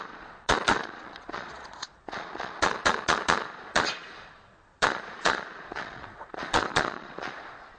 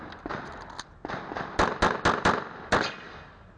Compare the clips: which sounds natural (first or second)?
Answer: second